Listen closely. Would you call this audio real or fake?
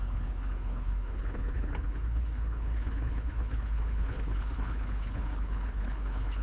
fake